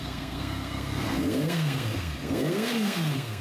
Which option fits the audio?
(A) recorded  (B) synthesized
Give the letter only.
B